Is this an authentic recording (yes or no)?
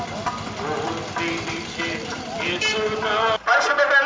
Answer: no